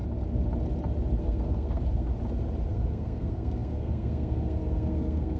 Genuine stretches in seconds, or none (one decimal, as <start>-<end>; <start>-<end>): 0.0-1.2; 2.1-2.7

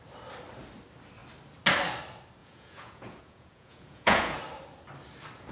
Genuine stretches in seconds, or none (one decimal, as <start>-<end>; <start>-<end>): 0.0-2.4; 4.4-5.5